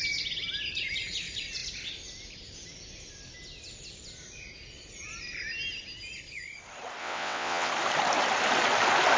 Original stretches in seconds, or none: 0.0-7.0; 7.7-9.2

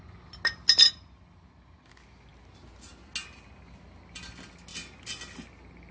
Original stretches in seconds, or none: 0.0-5.9

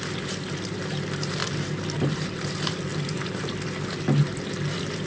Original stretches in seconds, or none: 0.0-5.1